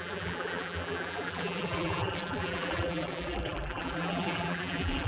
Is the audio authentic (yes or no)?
no